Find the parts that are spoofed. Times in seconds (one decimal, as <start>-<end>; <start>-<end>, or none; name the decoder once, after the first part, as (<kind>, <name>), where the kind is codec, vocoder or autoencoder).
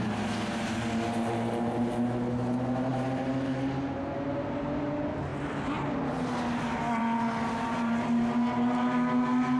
none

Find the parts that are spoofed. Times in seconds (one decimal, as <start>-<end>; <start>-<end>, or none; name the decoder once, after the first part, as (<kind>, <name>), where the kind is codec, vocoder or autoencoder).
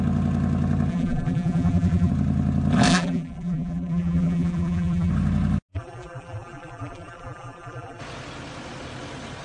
0.9-2.1 (vocoder, BigVGAN v2); 2.9-5.1; 5.7-8.0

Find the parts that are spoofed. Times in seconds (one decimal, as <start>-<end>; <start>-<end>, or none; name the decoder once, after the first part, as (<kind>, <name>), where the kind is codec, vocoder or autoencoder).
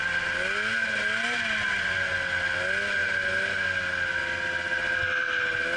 none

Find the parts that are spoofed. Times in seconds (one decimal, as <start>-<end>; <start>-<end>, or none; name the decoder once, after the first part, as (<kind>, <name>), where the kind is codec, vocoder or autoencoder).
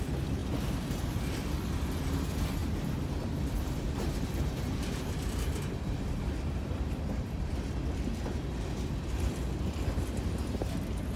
0.4-0.9 (vocoder, BigVGAN v2); 2.6-7.5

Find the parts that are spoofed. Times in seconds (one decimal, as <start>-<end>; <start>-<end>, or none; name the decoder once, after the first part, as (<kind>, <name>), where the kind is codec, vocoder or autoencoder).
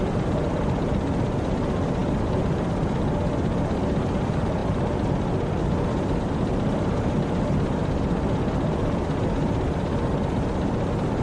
none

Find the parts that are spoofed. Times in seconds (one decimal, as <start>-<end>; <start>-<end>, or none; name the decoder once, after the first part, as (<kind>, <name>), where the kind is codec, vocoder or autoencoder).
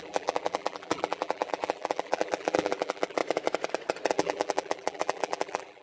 0.0-3.2 (vocoder, BigVGAN v2); 4.1-5.8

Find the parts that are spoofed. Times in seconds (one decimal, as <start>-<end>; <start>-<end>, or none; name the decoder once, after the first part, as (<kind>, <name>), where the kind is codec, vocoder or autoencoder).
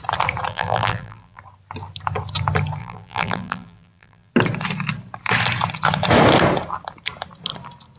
0.5-1.4 (vocoder, BigVGAN v2); 2.8-4.3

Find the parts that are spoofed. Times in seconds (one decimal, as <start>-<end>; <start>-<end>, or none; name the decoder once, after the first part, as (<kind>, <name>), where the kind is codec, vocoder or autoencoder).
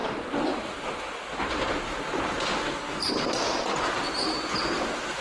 0.0-3.1 (vocoder, BigVGAN v2)